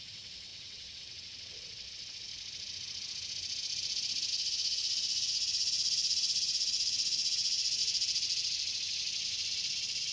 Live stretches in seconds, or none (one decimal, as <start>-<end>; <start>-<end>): 2.3-4.3; 7.8-10.1